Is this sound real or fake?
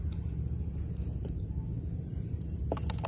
real